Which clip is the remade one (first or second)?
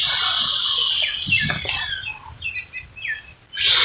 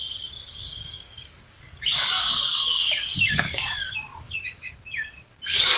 second